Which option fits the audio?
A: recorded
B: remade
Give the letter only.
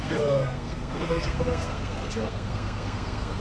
B